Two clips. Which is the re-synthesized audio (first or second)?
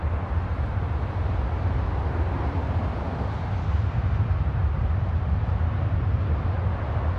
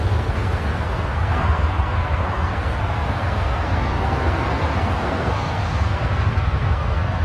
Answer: second